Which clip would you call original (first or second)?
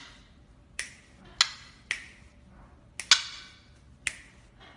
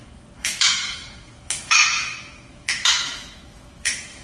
first